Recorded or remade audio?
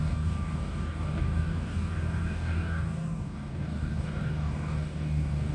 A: remade